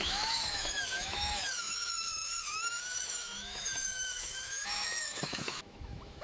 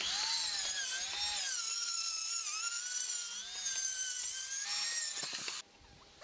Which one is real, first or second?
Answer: second